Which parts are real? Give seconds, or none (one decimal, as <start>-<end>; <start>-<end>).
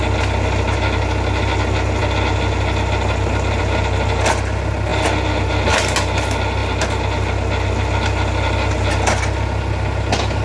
0.0-10.4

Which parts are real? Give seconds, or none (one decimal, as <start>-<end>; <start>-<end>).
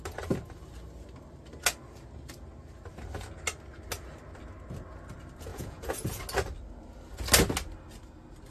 0.0-5.5; 6.2-8.5